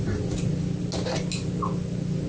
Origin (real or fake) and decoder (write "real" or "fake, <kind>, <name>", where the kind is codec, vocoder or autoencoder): real